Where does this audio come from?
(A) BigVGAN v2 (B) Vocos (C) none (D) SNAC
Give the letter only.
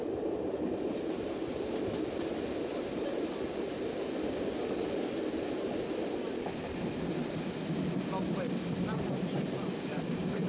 C